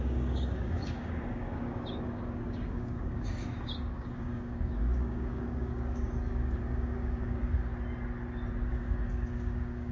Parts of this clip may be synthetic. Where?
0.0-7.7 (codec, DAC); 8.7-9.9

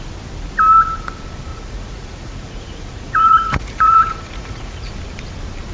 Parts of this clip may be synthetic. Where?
1.5-4.9 (vocoder, Vocos)